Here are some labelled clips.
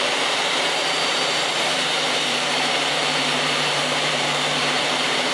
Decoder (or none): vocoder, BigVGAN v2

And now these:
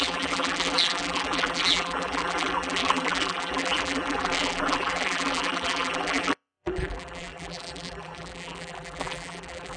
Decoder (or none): vocoder, BigVGAN v2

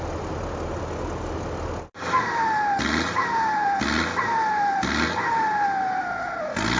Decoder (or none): none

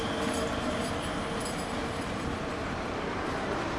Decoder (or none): none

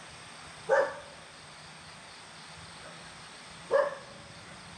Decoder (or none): none